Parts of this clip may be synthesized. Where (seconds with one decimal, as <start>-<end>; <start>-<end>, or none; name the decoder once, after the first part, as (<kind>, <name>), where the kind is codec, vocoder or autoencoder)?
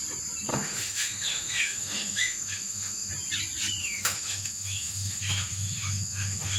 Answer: 0.5-3.1 (autoencoder, DAC-VAE); 3.8-6.6